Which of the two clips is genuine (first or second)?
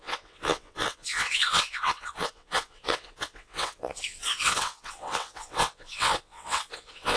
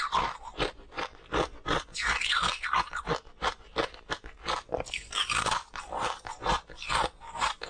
second